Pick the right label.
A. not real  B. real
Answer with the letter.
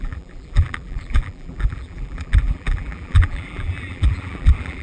A